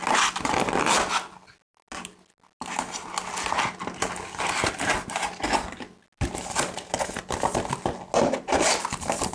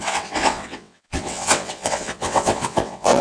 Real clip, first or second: first